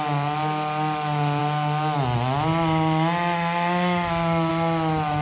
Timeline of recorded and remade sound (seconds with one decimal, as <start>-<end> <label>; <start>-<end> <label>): 0.0-5.2 recorded